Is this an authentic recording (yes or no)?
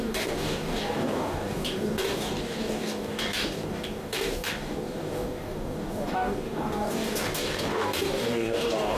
no